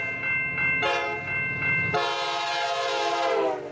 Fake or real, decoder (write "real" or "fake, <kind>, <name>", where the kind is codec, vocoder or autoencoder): real